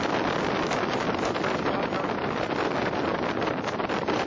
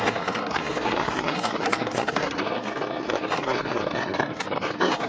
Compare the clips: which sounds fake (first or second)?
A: second